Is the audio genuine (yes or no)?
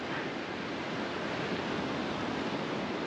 yes